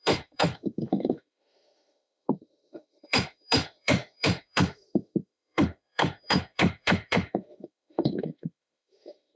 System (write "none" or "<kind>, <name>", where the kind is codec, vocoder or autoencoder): autoencoder, DAC-VAE